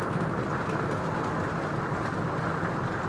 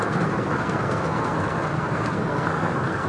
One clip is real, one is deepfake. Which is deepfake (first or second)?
second